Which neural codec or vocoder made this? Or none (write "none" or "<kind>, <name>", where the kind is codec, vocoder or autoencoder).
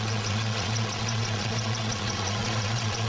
vocoder, Vocos